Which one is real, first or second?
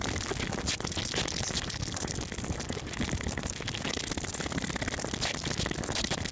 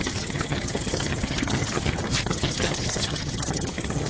first